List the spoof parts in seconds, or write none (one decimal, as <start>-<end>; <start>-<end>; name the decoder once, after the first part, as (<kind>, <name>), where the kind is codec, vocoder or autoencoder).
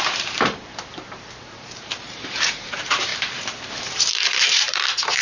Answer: 0.0-3.1 (vocoder, BigVGAN v2); 3.8-5.2